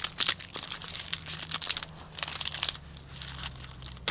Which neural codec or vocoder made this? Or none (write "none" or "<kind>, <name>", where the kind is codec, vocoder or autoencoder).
none